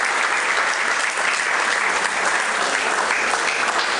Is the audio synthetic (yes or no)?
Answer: no